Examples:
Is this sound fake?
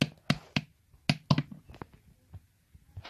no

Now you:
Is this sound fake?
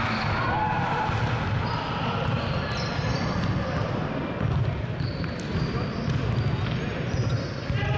no